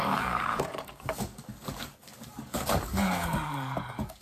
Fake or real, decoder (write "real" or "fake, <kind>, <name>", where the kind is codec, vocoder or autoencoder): fake, codec, DAC